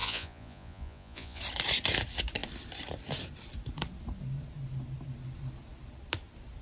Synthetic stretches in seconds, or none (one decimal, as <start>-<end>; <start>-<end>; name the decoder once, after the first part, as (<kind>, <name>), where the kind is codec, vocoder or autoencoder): 0.0-1.4 (vocoder, Vocos)